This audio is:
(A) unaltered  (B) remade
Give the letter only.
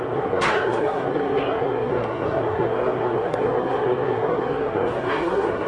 B